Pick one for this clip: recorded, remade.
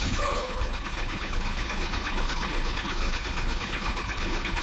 remade